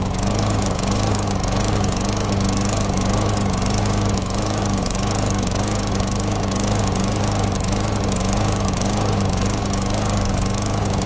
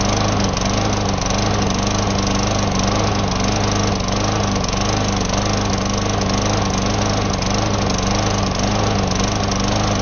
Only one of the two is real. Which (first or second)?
second